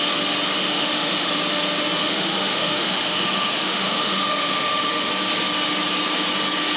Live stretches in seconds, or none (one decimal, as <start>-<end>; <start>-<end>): 0.0-0.6; 1.3-2.0; 5.1-6.8